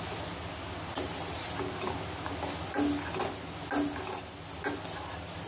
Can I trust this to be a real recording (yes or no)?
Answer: yes